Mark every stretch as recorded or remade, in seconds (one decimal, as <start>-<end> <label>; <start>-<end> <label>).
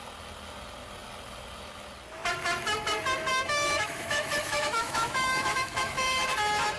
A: 0.0-3.3 recorded; 3.3-6.3 remade; 6.3-6.8 recorded